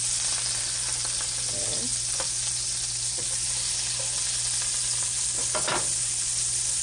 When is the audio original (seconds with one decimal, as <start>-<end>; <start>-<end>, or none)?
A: 0.0-6.8